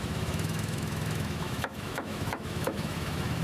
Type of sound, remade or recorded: remade